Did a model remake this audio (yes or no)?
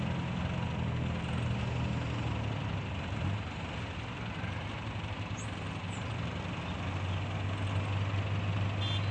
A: no